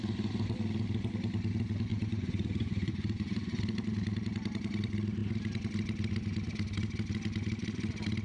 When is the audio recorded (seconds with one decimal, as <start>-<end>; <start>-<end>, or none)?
0.0-1.9; 3.6-8.2